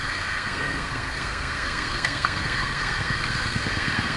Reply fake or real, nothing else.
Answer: fake